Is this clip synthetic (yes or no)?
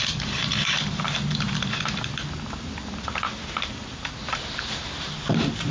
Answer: no